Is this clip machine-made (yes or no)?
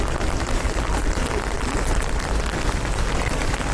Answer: yes